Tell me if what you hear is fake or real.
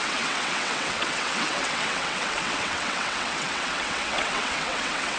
fake